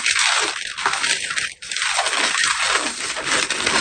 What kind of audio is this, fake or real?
fake